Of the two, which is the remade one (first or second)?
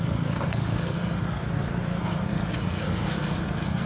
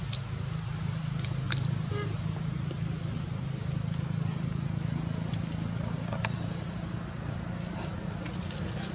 first